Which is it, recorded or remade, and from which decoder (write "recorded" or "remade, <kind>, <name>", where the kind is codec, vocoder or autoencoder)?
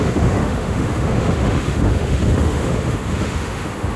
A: remade, autoencoder, DAC-VAE